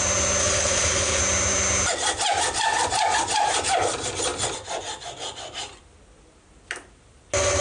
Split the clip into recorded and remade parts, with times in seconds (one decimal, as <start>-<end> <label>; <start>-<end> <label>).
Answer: 0.0-0.4 recorded; 0.4-1.2 remade; 1.2-7.6 recorded